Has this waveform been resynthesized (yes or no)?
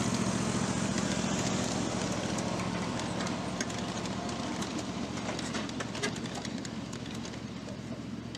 no